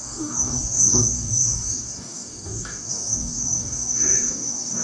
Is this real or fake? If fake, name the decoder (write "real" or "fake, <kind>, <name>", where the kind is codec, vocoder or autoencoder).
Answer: fake, codec, DAC